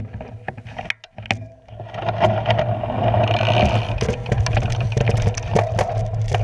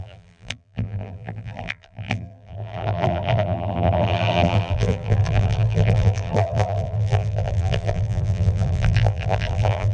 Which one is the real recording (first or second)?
first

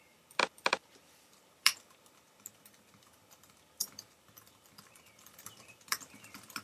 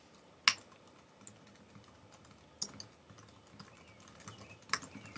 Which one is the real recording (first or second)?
second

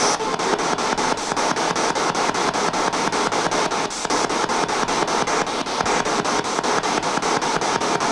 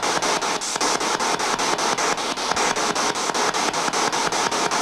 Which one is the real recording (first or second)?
second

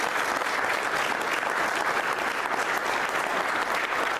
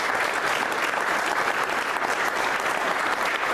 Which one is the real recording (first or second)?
first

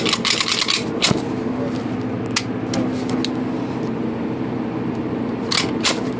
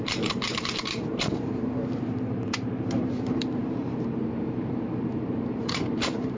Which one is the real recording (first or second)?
first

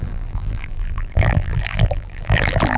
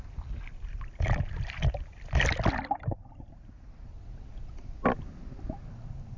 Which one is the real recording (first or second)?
second